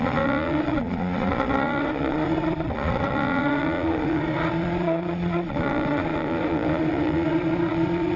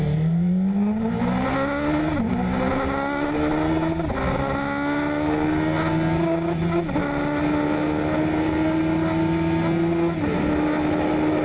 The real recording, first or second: second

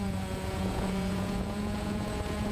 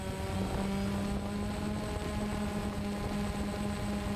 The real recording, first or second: second